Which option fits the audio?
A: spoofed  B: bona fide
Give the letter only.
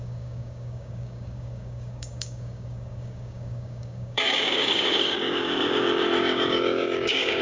A